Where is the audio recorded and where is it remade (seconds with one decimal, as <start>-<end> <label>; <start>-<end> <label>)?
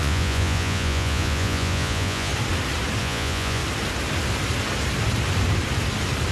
0.0-2.3 remade; 2.3-3.0 recorded; 3.0-3.6 remade; 3.6-6.3 recorded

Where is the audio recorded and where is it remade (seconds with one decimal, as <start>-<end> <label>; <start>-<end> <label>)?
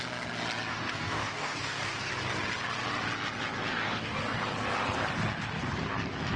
0.0-0.7 recorded; 0.7-2.1 remade; 2.1-3.7 recorded; 3.7-4.4 remade; 4.4-6.4 recorded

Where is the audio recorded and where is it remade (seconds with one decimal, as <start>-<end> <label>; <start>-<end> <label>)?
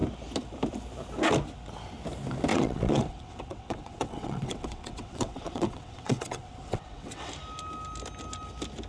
0.0-2.5 recorded; 2.5-7.3 remade; 7.3-8.9 recorded